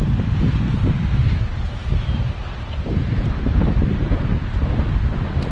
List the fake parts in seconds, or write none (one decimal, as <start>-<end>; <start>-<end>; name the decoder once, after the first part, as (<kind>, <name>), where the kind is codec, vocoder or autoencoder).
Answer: none